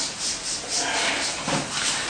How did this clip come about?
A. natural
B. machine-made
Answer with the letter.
A